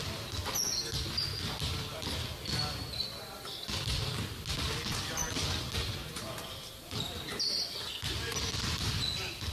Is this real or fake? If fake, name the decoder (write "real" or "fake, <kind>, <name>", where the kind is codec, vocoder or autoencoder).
real